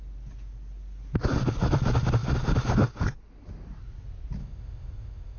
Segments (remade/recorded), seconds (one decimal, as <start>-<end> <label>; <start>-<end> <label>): 0.0-4.4 recorded; 4.4-5.4 remade